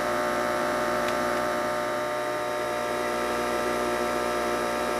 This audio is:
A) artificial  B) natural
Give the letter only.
A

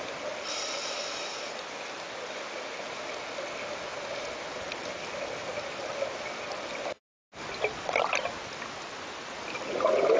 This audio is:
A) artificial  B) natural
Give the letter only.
B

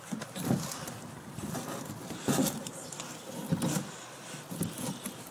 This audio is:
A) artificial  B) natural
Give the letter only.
B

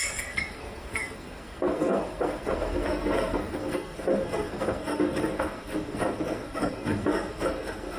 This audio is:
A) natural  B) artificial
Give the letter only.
B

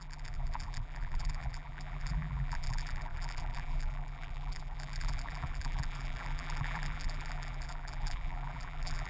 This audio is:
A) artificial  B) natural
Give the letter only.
A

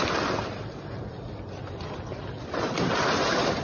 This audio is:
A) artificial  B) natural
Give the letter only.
B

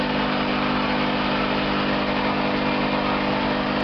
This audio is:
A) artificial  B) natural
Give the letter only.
B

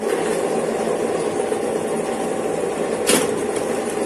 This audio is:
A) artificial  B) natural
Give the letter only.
B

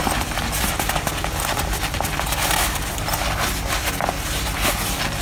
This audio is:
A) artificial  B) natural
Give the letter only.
B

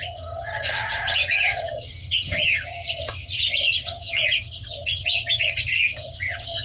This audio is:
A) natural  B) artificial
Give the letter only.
B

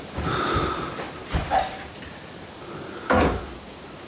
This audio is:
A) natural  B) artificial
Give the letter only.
B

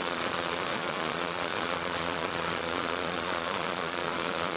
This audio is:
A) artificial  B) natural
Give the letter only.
A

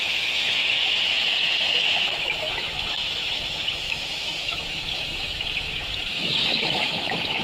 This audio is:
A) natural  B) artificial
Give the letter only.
B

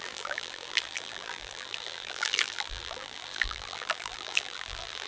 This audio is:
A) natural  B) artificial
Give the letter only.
B